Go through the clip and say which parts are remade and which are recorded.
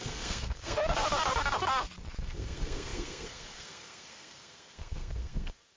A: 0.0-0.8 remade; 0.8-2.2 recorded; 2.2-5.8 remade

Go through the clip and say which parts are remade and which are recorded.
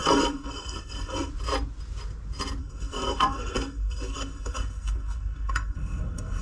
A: 0.0-1.3 remade; 1.3-2.6 recorded; 2.6-6.4 remade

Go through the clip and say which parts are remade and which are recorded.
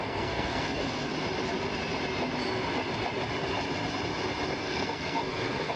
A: 0.0-1.1 remade; 1.1-4.6 recorded; 4.6-5.8 remade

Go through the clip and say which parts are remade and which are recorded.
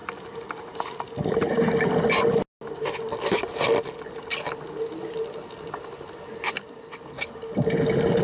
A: 0.0-8.2 recorded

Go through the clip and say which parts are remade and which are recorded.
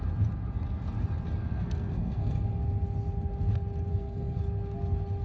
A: 0.0-1.4 recorded; 1.4-2.5 remade; 2.5-3.9 recorded; 3.9-4.4 remade; 4.4-5.2 recorded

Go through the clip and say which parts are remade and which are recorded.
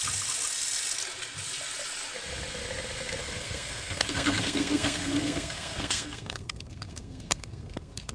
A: 0.0-3.2 recorded; 3.2-8.1 remade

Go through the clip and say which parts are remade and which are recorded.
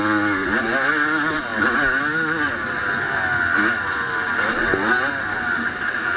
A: 0.0-6.2 recorded